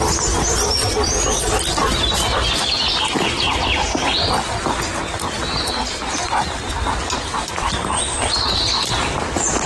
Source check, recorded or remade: recorded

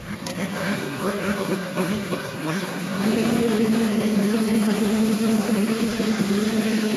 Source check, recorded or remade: remade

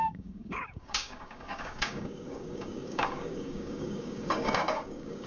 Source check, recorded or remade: remade